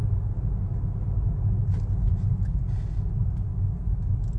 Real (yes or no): yes